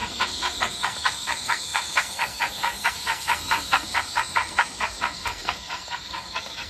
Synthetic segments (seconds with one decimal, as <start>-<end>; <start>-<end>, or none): 0.0-6.7

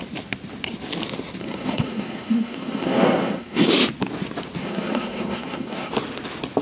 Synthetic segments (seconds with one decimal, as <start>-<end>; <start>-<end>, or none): 1.4-3.7; 4.6-5.9

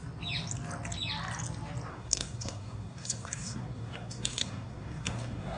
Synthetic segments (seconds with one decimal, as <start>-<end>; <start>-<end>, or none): 1.9-5.6

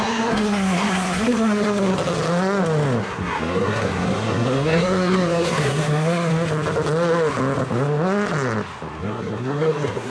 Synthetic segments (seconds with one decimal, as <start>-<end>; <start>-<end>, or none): 0.0-1.9; 3.0-6.3; 9.0-10.1

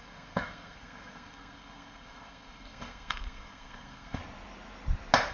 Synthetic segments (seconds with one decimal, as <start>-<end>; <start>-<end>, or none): 0.0-4.2

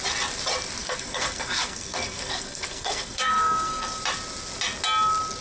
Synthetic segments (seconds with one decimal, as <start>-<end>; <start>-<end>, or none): 0.8-4.0